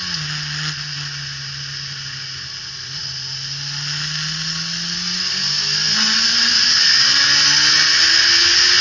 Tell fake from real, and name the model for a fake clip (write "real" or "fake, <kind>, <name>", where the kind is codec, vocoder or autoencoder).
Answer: real